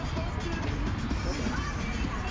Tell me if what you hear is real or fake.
real